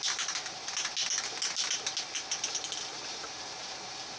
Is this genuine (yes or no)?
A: yes